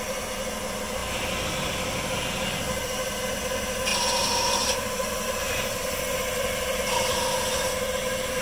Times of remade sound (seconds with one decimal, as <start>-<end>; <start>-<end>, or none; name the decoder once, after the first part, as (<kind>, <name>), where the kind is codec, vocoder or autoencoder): none